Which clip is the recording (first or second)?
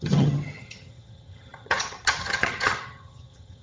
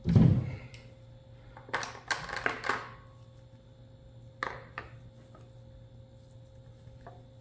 second